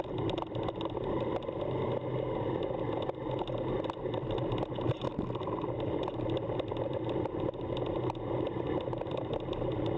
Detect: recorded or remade recorded